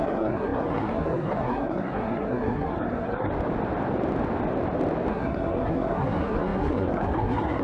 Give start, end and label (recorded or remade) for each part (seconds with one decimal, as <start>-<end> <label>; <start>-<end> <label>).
0.0-3.3 remade; 3.3-5.1 recorded; 5.1-7.6 remade